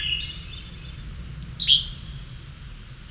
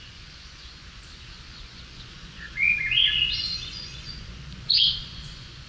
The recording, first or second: first